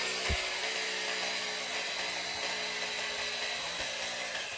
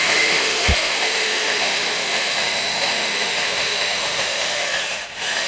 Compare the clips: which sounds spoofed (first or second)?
second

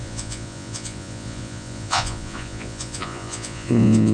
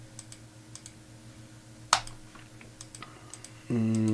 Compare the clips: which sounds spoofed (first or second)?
first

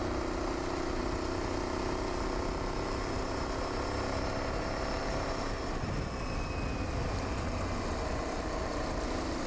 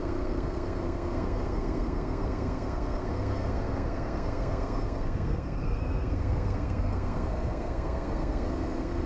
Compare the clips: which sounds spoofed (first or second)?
second